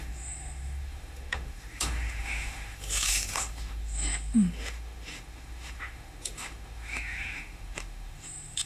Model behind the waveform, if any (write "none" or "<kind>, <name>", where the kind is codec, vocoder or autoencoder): autoencoder, DAC-VAE